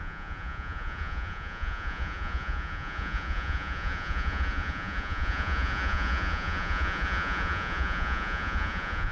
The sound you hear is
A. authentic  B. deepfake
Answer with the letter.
B